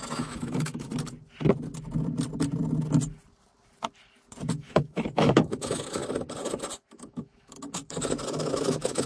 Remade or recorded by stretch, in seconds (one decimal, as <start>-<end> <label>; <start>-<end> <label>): 0.0-0.9 remade; 0.9-4.5 recorded; 4.5-6.0 remade; 6.0-6.9 recorded; 6.9-7.8 remade; 7.8-8.3 recorded; 8.3-9.1 remade